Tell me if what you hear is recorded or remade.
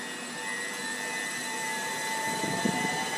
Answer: recorded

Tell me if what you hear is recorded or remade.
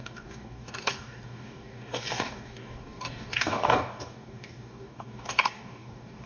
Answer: remade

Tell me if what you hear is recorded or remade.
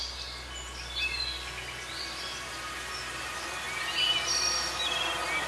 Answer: recorded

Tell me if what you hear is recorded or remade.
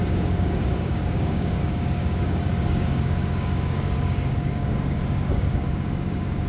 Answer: remade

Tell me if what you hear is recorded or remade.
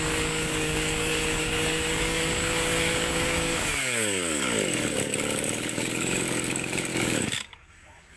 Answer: remade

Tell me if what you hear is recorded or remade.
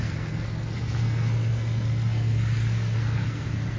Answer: remade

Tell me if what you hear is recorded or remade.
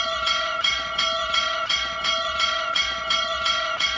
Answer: remade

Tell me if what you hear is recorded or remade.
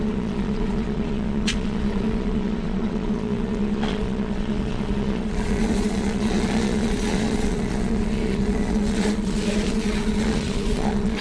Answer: remade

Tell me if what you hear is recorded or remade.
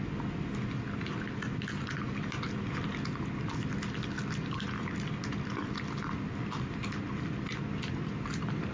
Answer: recorded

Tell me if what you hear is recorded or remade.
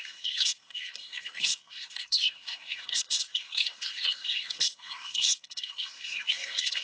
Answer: remade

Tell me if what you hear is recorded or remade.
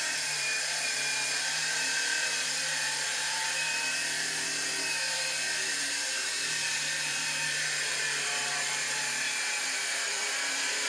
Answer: remade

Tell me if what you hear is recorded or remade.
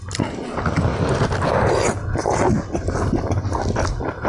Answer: recorded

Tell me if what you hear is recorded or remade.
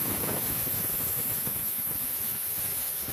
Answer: remade